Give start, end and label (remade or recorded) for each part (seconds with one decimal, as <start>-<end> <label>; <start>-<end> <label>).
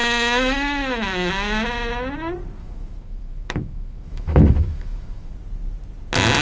0.0-1.3 remade; 1.3-2.6 recorded; 2.6-5.3 remade; 5.3-6.4 recorded